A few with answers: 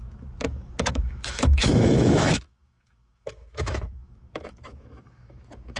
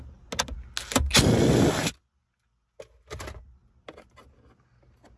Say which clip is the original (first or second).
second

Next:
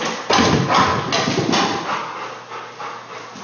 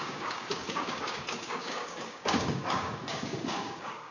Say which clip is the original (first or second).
first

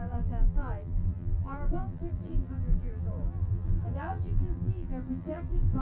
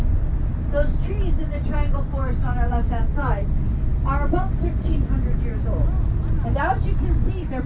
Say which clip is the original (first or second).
second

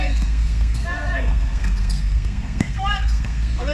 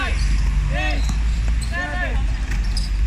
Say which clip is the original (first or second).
second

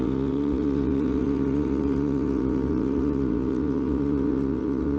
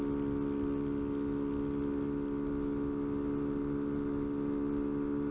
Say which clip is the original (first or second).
second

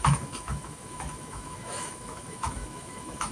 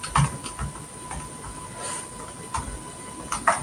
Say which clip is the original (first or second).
second